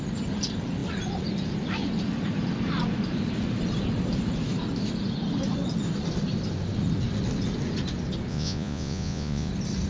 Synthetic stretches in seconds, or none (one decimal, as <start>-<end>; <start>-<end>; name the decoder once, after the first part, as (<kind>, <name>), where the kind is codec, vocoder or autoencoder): 8.3-9.5 (vocoder, Vocos)